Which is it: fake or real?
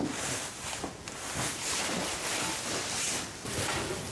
real